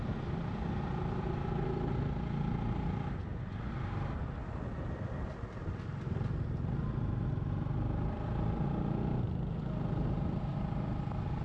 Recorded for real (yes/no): yes